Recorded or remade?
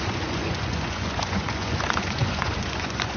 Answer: remade